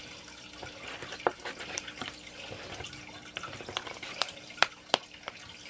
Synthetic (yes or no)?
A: no